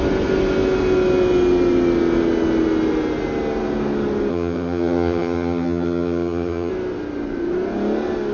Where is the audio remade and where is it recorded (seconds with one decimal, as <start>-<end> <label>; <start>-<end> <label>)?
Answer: 0.0-4.3 recorded; 4.3-6.7 remade; 6.7-8.3 recorded